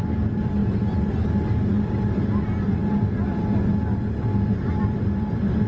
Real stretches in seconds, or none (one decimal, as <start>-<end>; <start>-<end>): 0.0-5.7